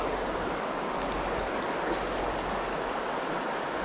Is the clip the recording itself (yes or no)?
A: yes